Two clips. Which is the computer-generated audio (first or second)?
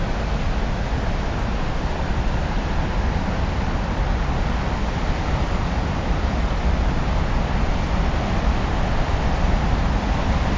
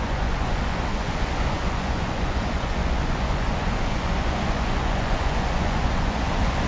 second